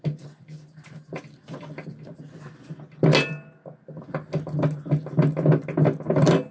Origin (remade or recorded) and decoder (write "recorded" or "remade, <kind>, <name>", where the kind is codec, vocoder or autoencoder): recorded